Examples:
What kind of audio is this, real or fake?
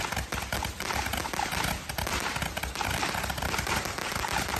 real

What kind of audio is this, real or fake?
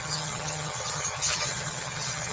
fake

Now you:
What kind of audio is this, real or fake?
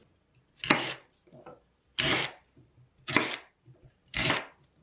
real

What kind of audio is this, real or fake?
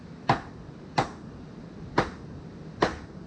real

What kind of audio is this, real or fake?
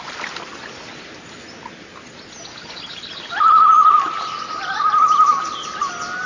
real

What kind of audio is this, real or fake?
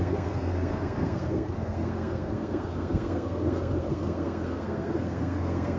fake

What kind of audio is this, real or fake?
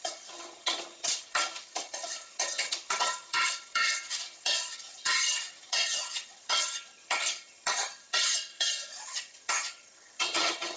fake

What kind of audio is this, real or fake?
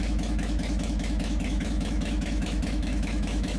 fake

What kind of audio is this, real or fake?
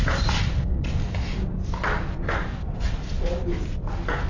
real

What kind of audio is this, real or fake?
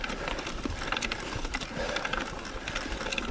real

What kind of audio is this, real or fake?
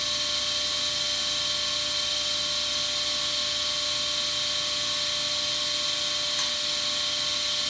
real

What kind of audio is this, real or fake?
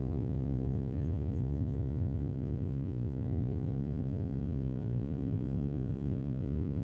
fake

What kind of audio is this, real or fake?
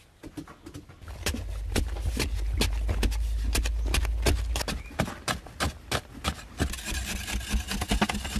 real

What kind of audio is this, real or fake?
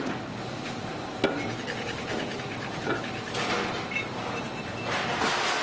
real